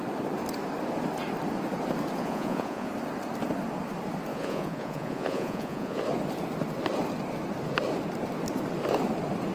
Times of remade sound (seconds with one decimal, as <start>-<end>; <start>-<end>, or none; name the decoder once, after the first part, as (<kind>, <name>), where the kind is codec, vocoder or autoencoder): 2.2-2.9 (vocoder, Vocos); 4.3-6.0